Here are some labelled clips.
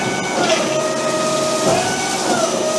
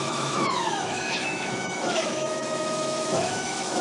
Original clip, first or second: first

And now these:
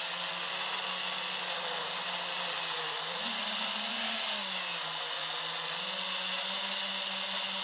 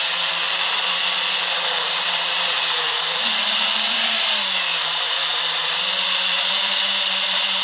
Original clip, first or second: first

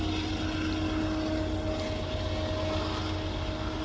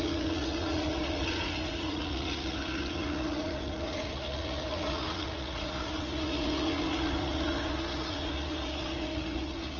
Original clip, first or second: first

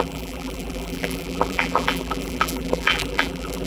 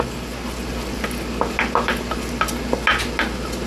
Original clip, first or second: second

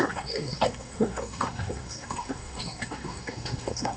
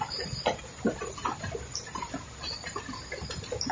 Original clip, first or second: second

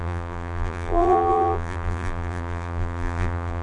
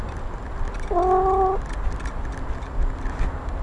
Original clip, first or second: second